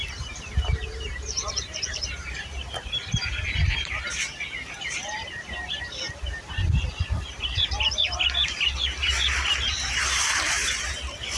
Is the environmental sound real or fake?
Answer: fake